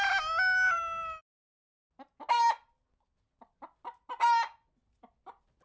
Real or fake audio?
real